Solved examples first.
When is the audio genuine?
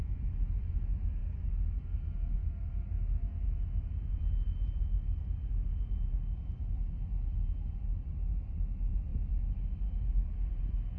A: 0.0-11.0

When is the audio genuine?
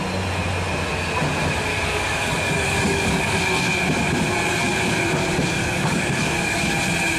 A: 0.0-1.7; 3.4-4.4; 4.9-5.6; 6.8-7.2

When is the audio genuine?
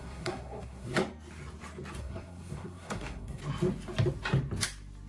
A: 1.0-2.0; 3.4-5.1